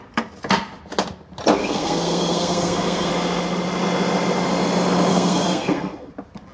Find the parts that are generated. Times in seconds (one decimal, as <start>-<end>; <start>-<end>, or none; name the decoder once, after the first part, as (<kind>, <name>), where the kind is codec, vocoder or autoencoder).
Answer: 1.6-3.1 (codec, SNAC); 5.1-6.1